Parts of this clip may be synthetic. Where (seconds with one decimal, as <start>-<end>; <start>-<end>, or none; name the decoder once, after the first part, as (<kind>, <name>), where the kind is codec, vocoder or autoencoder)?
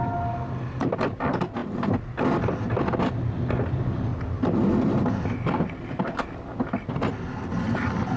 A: none